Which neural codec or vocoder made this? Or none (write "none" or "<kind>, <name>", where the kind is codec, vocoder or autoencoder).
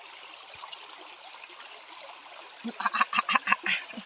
none